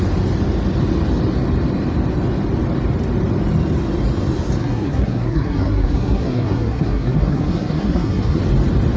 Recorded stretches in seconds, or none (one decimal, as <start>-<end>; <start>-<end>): 0.0-4.6; 8.4-9.0